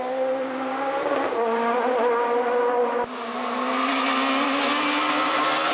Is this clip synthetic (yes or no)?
no